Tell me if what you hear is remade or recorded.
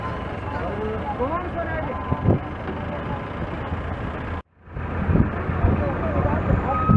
recorded